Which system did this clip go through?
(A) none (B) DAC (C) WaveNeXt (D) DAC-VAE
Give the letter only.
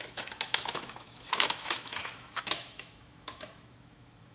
D